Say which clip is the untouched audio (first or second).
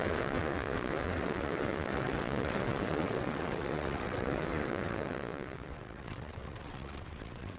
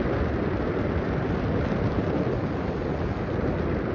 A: second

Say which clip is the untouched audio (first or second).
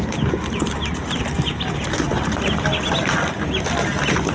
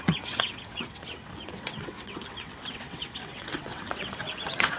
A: first